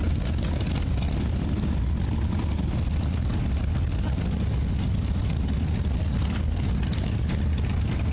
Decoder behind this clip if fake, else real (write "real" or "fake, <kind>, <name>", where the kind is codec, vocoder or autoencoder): real